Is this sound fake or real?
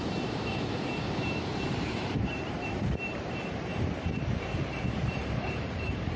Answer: fake